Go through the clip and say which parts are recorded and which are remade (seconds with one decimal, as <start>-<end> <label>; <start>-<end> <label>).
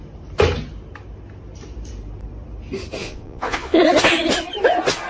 0.0-3.0 recorded; 3.0-3.8 remade; 3.8-5.1 recorded